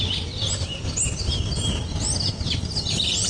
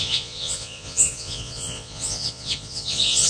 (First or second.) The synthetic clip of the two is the second